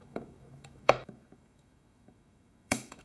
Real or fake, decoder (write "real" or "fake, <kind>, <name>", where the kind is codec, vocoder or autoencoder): fake, autoencoder, DAC-VAE